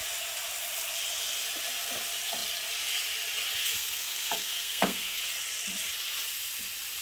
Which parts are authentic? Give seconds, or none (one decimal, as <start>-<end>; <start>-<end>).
0.0-3.6; 5.2-7.0